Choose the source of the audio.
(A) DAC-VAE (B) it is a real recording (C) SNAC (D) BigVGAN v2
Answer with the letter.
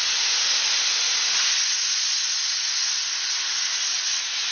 B